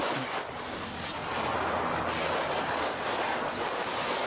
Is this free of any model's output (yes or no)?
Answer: yes